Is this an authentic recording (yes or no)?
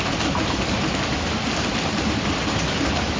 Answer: yes